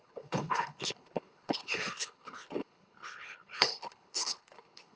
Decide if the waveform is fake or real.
fake